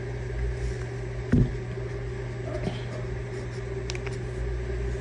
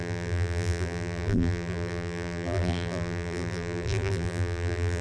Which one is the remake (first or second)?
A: second